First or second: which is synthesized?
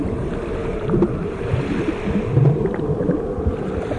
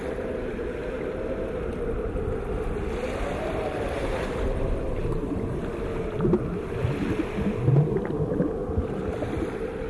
first